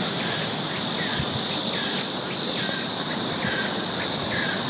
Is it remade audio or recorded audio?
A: recorded